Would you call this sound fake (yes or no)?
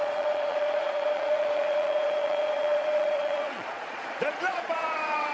yes